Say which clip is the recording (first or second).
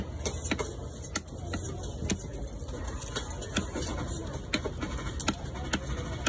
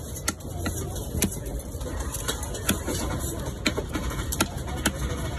first